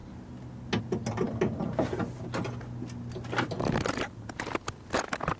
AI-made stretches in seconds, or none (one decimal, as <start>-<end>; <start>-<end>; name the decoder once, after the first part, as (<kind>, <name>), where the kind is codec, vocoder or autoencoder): none